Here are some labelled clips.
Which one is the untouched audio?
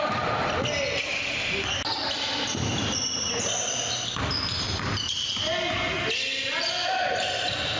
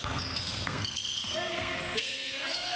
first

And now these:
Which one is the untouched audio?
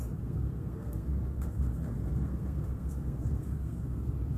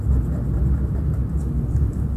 second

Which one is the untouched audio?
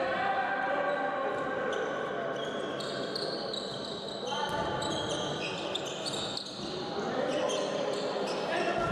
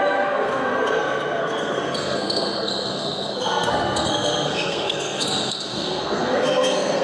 first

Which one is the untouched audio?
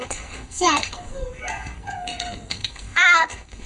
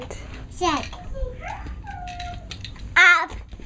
second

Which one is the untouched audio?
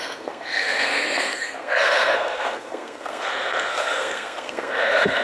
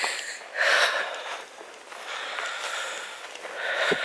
second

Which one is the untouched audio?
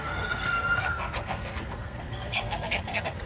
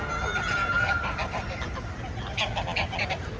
second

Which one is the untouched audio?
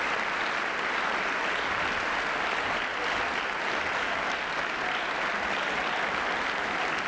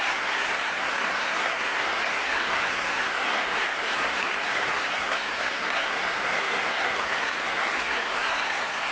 first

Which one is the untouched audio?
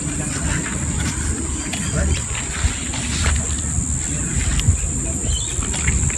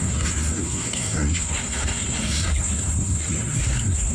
first